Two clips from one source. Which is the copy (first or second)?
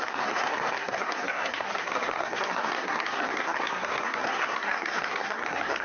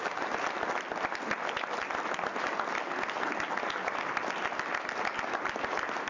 first